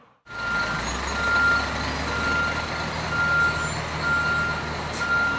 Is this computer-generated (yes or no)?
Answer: no